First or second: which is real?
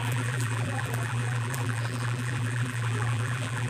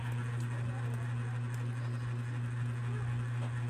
second